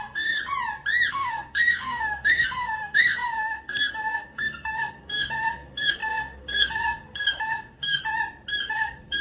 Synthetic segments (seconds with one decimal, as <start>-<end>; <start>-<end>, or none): 0.0-0.4; 1.1-8.0; 8.6-9.2